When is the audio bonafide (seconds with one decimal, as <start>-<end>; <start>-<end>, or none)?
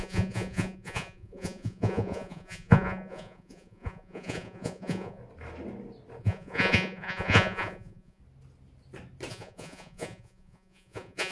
5.2-6.2; 8.2-9.3